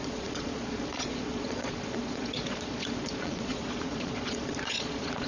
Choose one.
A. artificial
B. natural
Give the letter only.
A